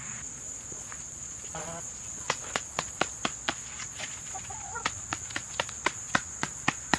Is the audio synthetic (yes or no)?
yes